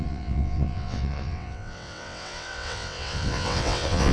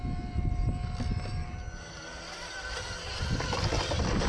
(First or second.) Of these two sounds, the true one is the second